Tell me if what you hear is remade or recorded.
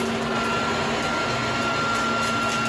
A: recorded